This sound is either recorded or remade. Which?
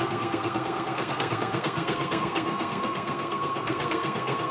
remade